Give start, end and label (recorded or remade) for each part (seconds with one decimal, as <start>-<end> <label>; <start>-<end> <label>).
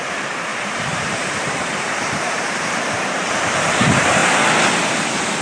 0.0-0.5 recorded; 0.5-3.7 remade; 3.7-5.4 recorded